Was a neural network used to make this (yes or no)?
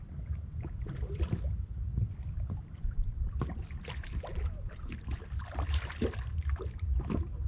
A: no